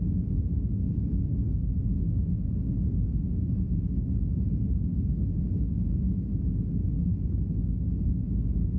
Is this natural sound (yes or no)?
no